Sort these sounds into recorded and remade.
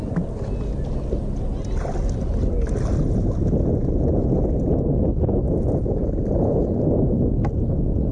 recorded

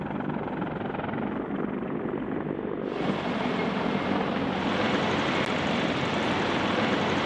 recorded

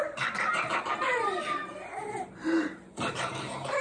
remade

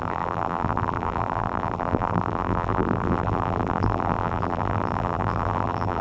remade